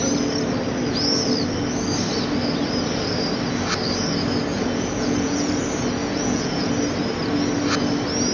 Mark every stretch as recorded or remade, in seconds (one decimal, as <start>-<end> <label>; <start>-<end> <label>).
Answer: 0.0-4.5 recorded; 4.5-5.6 remade; 5.6-6.0 recorded; 6.0-6.7 remade; 6.7-8.3 recorded